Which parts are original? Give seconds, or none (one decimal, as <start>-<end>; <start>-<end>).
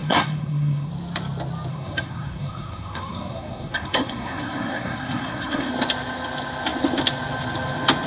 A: 0.9-1.7; 5.7-8.1